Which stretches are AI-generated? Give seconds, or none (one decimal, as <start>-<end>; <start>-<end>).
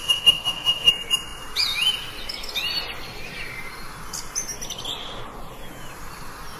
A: 0.0-0.9